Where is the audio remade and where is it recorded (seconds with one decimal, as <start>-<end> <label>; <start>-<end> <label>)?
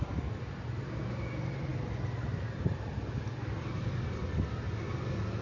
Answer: 0.0-5.4 recorded